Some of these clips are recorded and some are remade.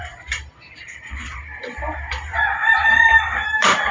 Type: remade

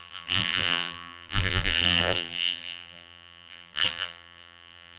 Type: remade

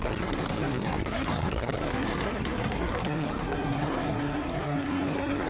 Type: remade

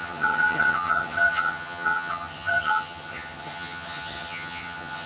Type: remade